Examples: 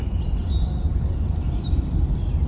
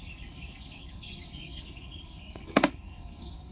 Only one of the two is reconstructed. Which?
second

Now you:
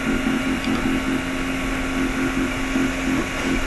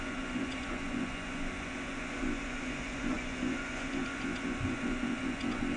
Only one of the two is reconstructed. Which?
second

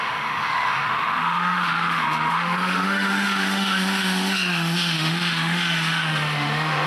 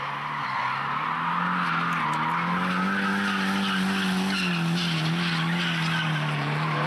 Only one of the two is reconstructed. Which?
first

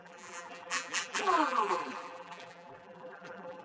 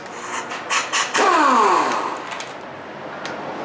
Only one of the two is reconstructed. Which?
first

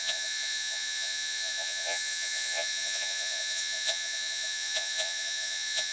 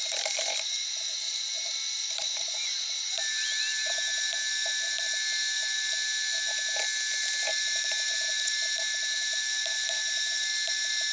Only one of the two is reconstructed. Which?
first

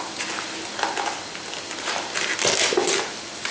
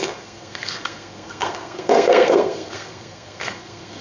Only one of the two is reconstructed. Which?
second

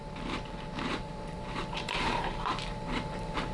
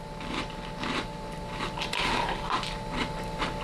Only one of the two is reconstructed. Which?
first